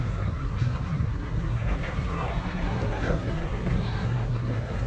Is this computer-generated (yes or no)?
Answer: yes